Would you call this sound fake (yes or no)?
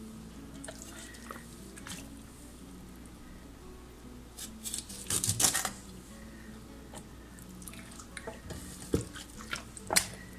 no